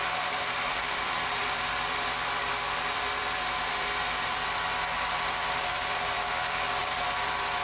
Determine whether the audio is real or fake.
fake